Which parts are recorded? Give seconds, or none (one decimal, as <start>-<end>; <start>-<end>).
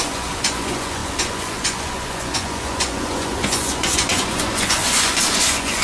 none